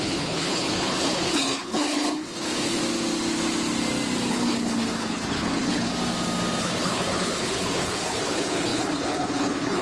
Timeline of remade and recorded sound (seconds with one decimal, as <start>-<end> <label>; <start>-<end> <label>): 0.0-2.8 remade; 2.8-4.3 recorded; 4.3-5.9 remade; 5.9-6.6 recorded; 6.6-9.8 remade